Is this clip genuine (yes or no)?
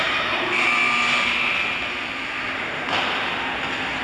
yes